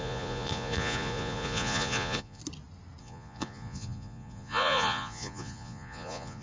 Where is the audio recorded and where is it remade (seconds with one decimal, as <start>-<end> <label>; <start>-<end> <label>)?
0.0-2.4 remade; 2.4-3.0 recorded; 3.0-6.4 remade